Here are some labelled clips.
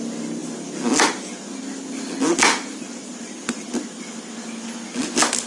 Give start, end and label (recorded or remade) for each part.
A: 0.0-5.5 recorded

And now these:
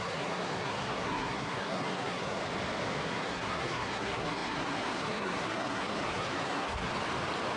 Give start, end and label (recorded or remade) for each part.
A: 0.0-2.4 remade; 2.4-3.1 recorded; 3.1-6.9 remade; 6.9-7.6 recorded

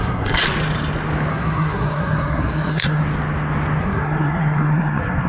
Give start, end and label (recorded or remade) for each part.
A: 0.0-0.4 remade; 0.4-1.3 recorded; 1.3-3.0 remade; 3.0-3.8 recorded; 3.8-5.3 remade

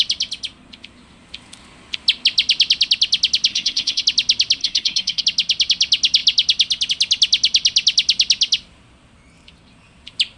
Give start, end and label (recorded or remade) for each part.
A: 0.0-3.5 recorded; 3.5-4.0 remade; 4.0-4.6 recorded; 4.6-5.2 remade; 5.2-10.4 recorded

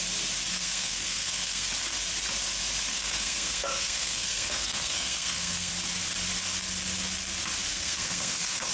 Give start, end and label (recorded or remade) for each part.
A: 0.0-0.5 recorded; 0.5-1.7 remade; 1.7-2.9 recorded; 2.9-5.7 remade; 5.7-7.7 recorded; 7.7-8.7 remade